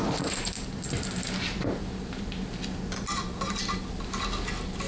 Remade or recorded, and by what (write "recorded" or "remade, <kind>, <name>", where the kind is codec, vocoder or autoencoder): recorded